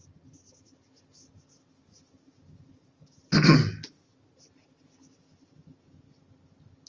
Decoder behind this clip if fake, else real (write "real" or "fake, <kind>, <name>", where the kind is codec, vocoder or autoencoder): real